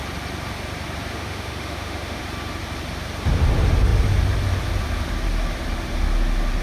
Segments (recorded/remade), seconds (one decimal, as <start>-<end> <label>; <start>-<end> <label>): 0.0-1.1 recorded; 1.1-2.2 remade; 2.2-6.6 recorded